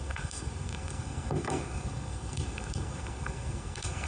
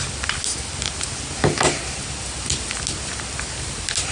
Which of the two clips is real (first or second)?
second